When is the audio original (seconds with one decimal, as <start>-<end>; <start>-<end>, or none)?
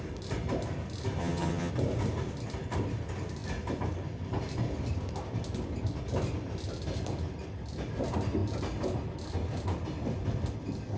0.0-1.2; 1.7-11.0